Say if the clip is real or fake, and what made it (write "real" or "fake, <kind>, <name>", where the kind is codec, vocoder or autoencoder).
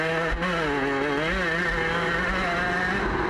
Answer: real